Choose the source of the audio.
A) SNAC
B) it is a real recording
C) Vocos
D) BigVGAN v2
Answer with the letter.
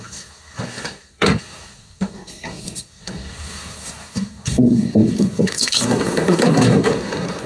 A